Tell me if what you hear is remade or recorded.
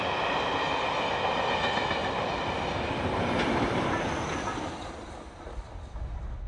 recorded